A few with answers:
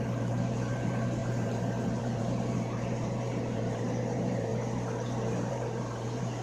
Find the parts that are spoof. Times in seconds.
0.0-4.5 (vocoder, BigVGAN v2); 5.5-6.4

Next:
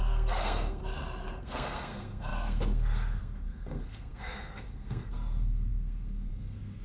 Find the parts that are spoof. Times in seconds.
0.0-0.8 (codec, SNAC); 1.4-6.8

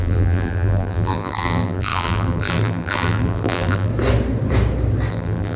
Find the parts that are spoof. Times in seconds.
0.0-3.9 (vocoder, BigVGAN v2); 5.1-5.6

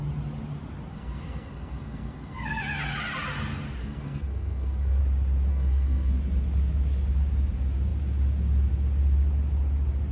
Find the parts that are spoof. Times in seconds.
0.9-2.6 (codec, SNAC); 3.8-5.0; 5.5-6.1

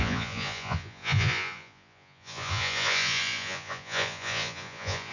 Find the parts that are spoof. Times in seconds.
0.0-5.1 (vocoder, Vocos)

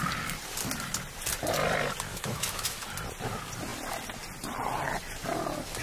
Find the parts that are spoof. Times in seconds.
2.1-2.8 (autoencoder, DAC-VAE)

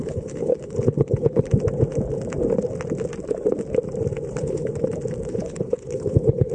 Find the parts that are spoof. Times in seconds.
0.0-1.5 (codec, HILCodec); 4.3-4.7; 5.3-6.5